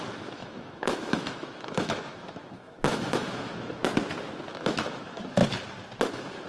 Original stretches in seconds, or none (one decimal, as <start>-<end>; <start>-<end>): 3.8-4.5; 5.4-6.1